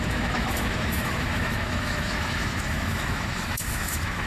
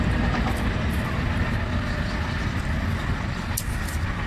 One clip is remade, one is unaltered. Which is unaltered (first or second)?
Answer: second